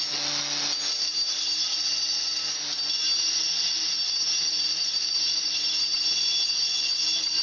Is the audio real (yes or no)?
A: yes